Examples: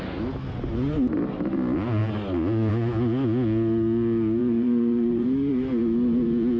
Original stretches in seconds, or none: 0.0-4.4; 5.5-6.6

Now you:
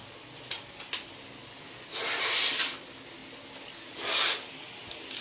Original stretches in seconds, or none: 0.0-5.2

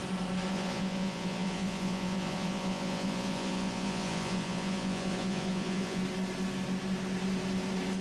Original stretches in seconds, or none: 0.0-0.5; 6.0-8.0

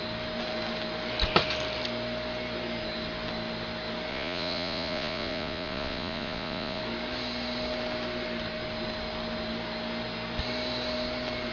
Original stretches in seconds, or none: 0.0-4.1; 6.8-11.5

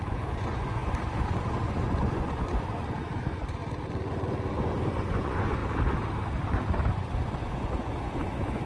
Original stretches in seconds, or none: 3.6-4.5; 5.6-6.9

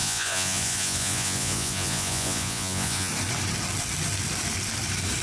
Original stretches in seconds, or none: 3.1-5.2

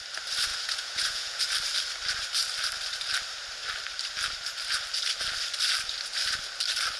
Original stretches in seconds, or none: 0.0-0.5; 1.4-7.0

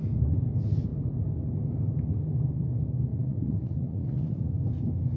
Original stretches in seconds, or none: 0.0-3.1; 4.5-5.2